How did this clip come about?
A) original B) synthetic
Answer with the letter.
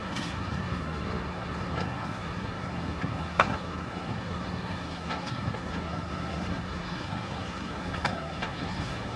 B